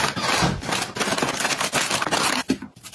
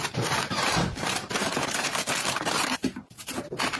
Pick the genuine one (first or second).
first